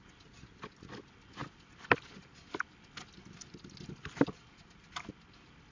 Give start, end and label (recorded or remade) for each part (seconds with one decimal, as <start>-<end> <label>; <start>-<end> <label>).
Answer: 0.0-5.7 recorded